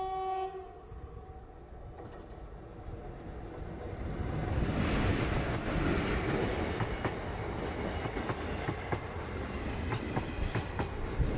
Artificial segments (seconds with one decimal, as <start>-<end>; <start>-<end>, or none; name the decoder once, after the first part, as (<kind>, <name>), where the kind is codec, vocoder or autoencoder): none